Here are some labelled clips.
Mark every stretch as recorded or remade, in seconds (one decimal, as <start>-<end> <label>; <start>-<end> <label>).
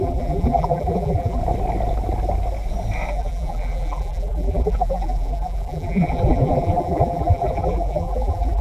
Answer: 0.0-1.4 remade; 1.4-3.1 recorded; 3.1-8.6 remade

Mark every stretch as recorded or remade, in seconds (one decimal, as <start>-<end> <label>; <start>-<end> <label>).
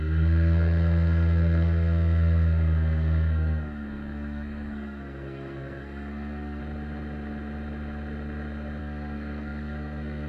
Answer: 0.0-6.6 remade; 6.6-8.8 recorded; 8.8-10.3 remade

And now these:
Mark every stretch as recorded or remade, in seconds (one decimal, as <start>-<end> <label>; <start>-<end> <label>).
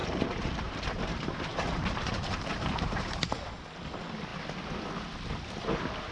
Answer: 0.0-1.0 remade; 1.0-1.5 recorded; 1.5-3.6 remade; 3.6-6.1 recorded